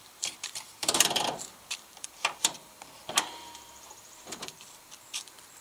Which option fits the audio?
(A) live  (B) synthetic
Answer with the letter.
B